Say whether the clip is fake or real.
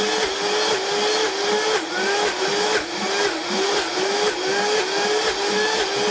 real